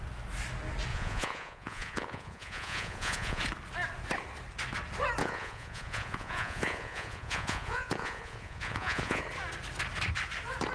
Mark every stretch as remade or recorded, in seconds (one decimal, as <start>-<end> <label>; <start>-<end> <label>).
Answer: 0.0-0.9 recorded; 0.9-3.4 remade; 3.4-5.2 recorded; 5.2-9.2 remade; 9.2-10.7 recorded